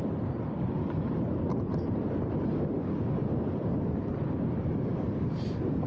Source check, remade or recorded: recorded